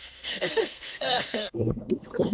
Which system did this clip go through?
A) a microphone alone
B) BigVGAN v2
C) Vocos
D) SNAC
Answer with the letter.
D